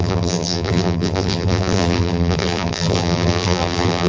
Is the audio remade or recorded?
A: remade